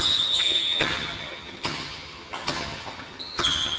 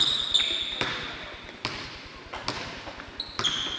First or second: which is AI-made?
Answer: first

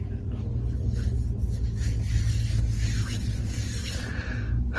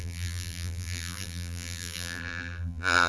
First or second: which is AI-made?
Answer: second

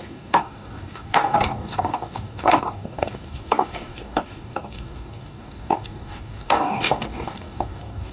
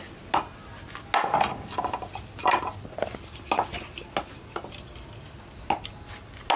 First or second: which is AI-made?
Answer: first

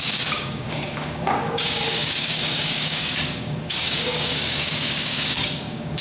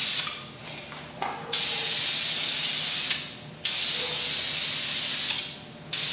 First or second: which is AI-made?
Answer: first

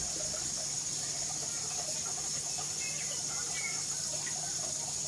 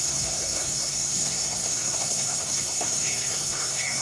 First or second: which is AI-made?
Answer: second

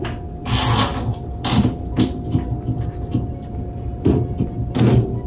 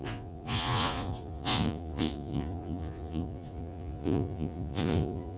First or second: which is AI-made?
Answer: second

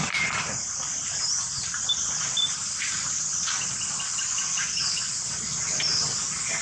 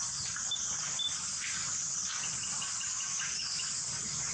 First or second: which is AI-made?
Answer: first